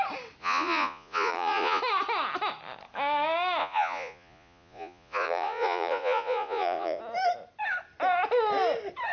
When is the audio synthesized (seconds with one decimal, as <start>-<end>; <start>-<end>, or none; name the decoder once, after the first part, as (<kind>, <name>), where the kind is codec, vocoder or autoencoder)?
0.4-1.8 (vocoder, Vocos); 3.6-7.0